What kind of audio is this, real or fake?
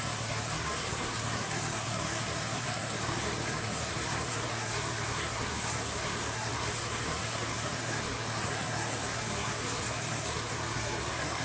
fake